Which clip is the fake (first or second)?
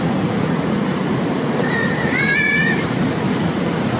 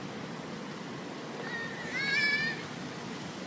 first